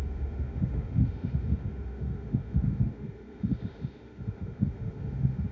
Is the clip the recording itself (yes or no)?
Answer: no